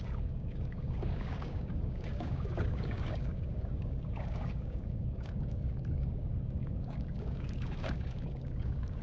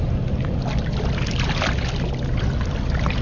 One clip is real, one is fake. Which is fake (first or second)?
first